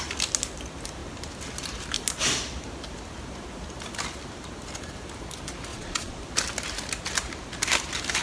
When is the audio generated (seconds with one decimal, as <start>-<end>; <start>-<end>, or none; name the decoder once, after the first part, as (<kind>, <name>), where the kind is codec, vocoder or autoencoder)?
5.7-6.2 (vocoder, Vocos)